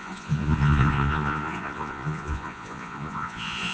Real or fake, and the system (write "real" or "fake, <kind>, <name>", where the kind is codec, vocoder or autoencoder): fake, vocoder, Vocos